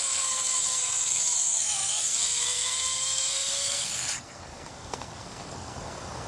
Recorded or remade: remade